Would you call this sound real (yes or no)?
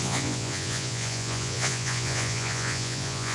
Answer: no